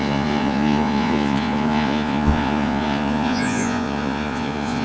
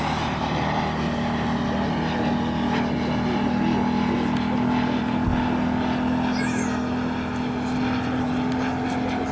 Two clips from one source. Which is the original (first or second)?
second